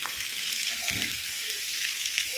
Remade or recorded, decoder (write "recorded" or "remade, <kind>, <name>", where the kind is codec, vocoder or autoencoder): remade, codec, SNAC